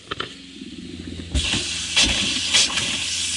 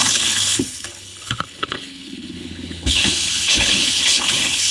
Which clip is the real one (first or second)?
first